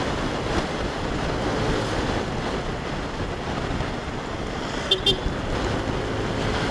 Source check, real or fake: real